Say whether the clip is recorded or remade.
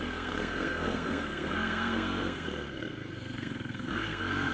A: remade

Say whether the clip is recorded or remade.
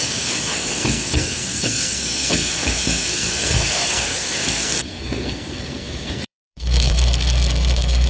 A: remade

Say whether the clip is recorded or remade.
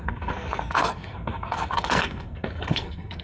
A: remade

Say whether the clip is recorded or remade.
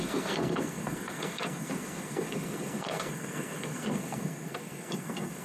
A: remade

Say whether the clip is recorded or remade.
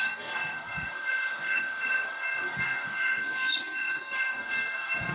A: remade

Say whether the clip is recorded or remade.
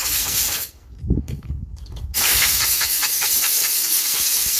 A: remade